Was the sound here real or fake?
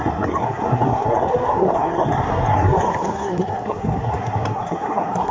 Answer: fake